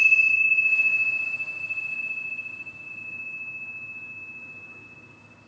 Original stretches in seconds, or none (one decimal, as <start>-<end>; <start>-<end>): 0.0-5.5